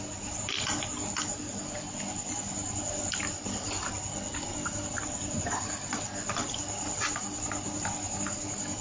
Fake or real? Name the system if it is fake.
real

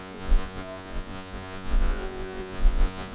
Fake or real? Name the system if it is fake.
fake, vocoder, Vocos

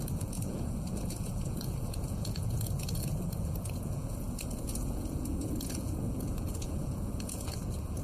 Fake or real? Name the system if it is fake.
fake, vocoder, Vocos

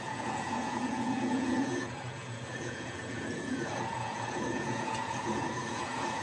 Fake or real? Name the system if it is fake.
fake, vocoder, Vocos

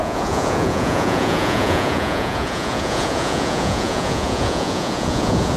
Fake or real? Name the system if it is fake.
fake, vocoder, Vocos